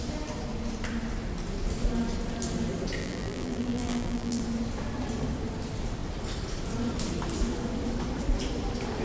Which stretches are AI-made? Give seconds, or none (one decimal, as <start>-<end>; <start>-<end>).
3.0-4.4